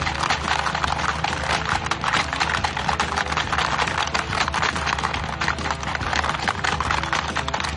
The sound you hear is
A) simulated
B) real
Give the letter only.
B